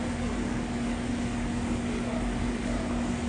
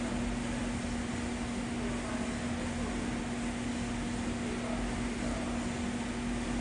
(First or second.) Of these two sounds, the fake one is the first